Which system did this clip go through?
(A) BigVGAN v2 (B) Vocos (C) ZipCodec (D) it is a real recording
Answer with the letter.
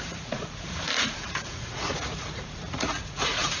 B